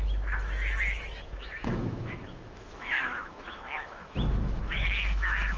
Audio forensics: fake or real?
fake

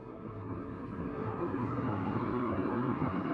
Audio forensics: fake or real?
fake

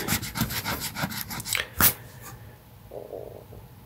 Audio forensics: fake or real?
real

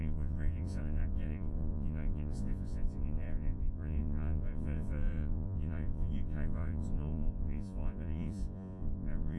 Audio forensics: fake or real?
fake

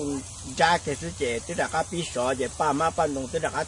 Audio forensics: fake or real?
real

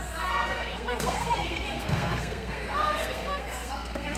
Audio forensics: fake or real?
fake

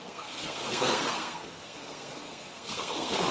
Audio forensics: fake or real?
fake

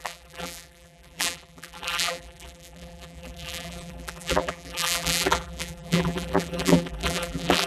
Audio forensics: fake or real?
fake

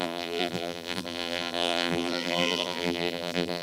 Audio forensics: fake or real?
fake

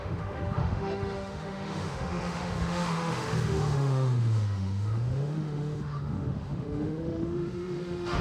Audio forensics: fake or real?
fake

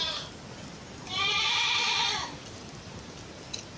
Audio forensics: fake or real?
real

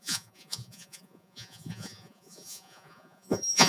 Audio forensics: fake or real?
fake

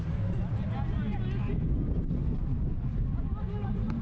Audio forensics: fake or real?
real